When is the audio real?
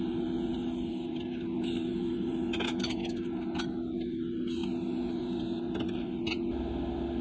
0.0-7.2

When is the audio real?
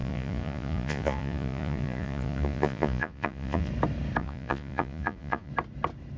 3.7-4.2; 5.5-6.2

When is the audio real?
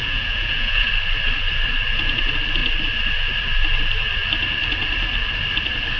0.9-6.0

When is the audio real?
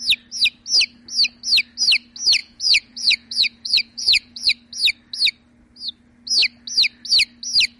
0.0-2.4; 4.5-7.8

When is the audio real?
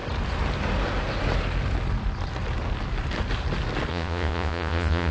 0.0-3.9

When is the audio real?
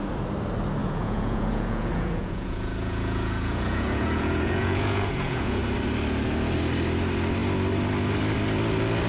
0.0-0.8; 5.6-9.1